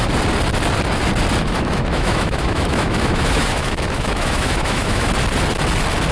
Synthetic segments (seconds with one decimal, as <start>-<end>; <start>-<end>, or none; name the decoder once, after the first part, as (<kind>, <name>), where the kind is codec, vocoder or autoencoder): 1.4-5.1 (autoencoder, DAC-VAE)